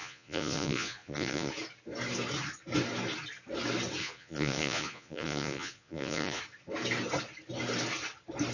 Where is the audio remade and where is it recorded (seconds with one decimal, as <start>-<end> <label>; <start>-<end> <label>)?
0.0-1.5 remade; 1.5-4.0 recorded; 4.0-6.4 remade; 6.4-8.5 recorded